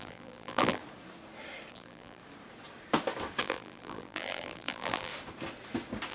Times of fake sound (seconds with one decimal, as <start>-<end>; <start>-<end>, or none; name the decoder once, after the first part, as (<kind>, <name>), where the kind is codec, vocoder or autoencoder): 0.0-0.8 (vocoder, BigVGAN v2); 1.7-2.2; 3.4-5.1